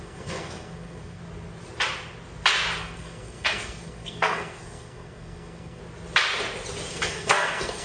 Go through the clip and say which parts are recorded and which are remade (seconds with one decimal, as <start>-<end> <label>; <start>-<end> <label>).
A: 0.0-1.2 remade; 1.2-2.8 recorded; 2.8-5.8 remade; 5.8-6.9 recorded; 6.9-7.8 remade